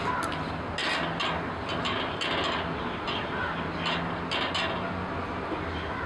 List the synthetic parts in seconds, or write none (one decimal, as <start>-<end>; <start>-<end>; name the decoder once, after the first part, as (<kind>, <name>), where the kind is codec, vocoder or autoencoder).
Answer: none